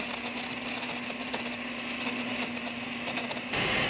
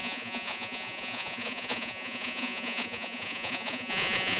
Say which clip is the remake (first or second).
second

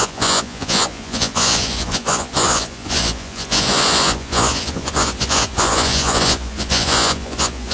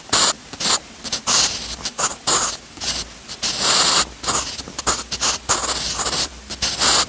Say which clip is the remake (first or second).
first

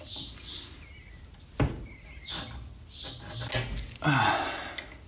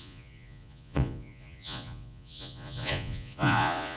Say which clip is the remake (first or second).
second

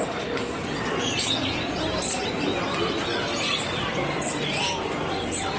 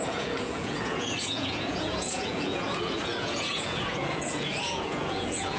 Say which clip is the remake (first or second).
second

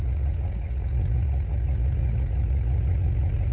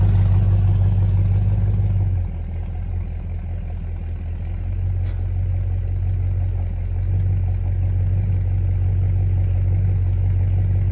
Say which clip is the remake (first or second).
first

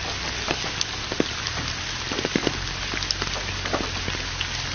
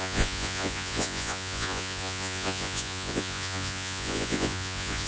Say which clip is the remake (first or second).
second